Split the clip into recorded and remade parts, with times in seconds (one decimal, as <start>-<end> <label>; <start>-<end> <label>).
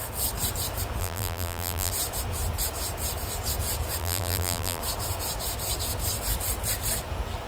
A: 0.0-1.0 recorded; 1.0-1.9 remade; 1.9-4.0 recorded; 4.0-4.8 remade; 4.8-7.5 recorded